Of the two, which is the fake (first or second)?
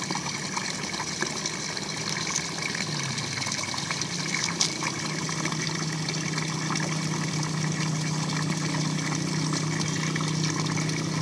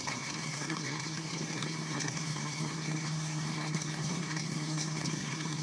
second